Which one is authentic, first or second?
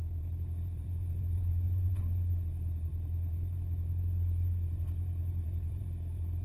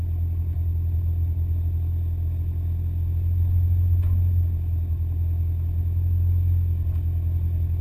second